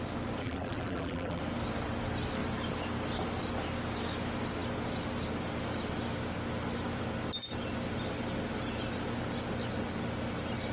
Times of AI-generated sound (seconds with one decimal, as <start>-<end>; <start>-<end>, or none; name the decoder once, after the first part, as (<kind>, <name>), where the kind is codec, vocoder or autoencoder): 0.4-1.4 (vocoder, BigVGAN v2)